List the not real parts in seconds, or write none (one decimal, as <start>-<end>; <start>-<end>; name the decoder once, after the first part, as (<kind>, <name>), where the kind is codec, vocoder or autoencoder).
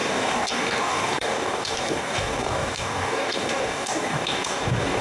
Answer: 0.0-5.0 (codec, DAC)